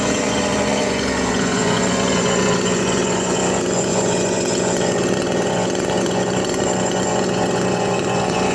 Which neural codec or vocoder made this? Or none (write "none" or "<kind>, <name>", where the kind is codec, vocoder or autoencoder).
vocoder, Vocos